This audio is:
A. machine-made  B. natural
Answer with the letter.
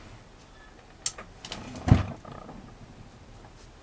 B